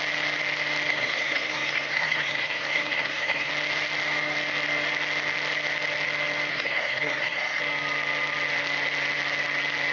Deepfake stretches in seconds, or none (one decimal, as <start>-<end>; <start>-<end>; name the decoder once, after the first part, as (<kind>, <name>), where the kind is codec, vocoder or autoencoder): 0.9-3.5 (codec, SNAC); 6.5-7.6